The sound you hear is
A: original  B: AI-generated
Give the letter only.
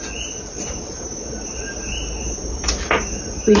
A